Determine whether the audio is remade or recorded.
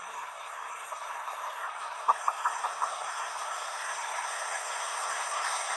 remade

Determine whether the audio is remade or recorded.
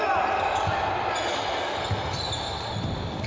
recorded